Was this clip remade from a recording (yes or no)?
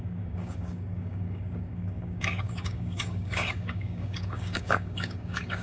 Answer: yes